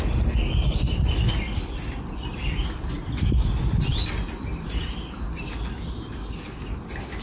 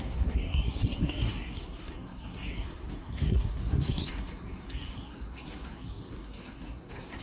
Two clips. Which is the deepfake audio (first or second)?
second